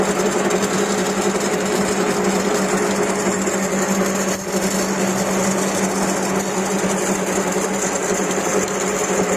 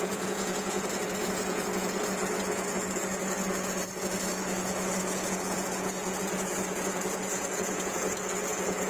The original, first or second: first